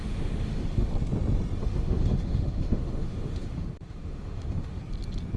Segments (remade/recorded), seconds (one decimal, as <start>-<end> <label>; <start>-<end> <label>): 0.0-0.9 remade; 0.9-1.6 recorded; 1.6-4.8 remade; 4.8-5.4 recorded